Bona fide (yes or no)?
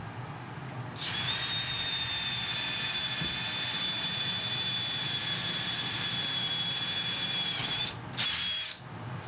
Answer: yes